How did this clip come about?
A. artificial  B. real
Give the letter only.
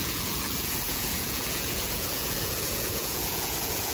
A